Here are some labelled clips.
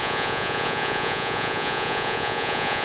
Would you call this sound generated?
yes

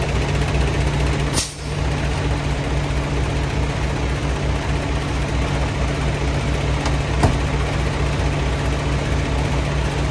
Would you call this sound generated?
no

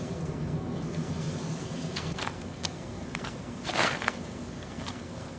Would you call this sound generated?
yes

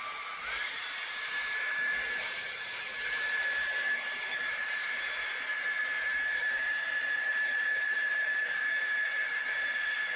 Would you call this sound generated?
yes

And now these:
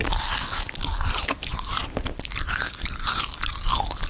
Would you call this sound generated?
no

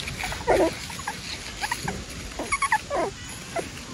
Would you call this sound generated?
no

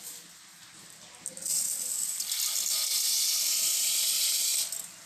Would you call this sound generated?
yes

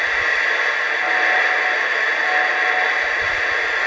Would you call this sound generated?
no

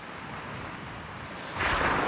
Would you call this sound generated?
no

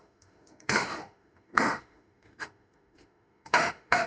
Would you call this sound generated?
yes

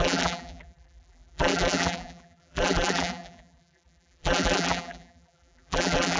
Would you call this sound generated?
yes